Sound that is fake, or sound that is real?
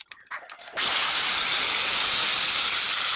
real